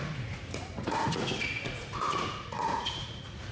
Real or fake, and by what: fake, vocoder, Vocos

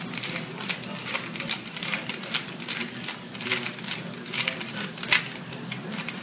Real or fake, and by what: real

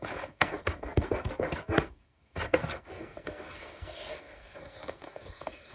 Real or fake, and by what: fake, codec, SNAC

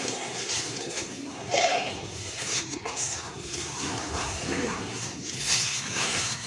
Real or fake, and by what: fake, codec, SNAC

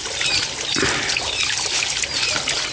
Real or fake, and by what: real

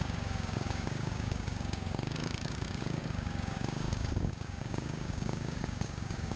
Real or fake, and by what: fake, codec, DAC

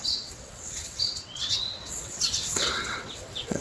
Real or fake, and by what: fake, vocoder, WaveNeXt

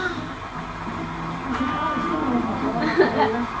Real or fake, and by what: real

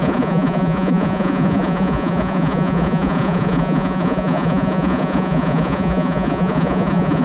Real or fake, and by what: fake, vocoder, Vocos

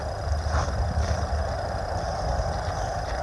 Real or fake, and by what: real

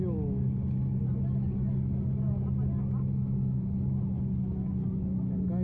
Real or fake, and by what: real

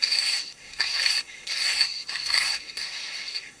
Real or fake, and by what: fake, codec, SNAC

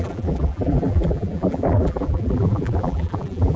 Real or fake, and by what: fake, vocoder, BigVGAN v2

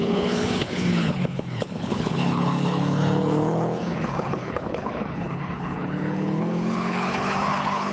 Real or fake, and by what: fake, codec, HILCodec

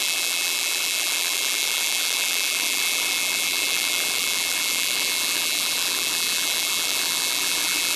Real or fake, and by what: fake, vocoder, BigVGAN v2